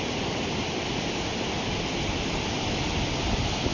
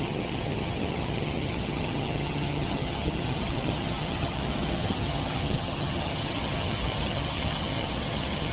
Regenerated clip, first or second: second